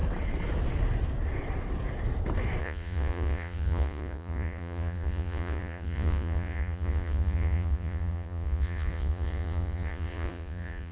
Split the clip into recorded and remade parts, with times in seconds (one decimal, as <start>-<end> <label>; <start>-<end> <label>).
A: 0.0-2.6 recorded; 2.6-10.9 remade